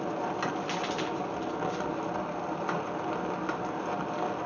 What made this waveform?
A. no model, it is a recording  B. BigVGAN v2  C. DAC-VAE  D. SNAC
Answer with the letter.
A